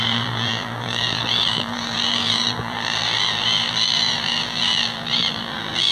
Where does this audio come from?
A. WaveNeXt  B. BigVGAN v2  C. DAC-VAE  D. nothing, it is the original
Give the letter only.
B